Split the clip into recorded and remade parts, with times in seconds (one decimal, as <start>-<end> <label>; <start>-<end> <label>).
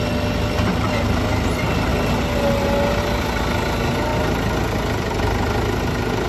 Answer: 0.0-6.3 recorded